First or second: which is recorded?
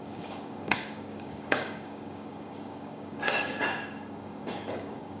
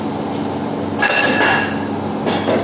second